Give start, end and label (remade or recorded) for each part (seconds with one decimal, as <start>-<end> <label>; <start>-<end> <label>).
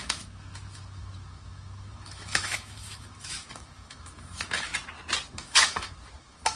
0.0-4.7 remade; 4.7-5.3 recorded; 5.3-6.6 remade